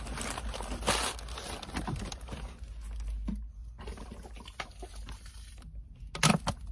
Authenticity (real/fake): real